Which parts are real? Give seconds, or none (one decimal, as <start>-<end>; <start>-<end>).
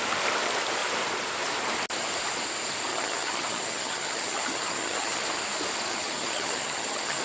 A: 0.0-2.9; 5.2-5.9